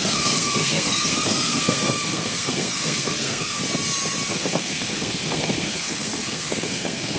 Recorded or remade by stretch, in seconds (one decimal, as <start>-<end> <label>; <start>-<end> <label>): 0.0-3.6 remade; 3.6-4.3 recorded; 4.3-7.2 remade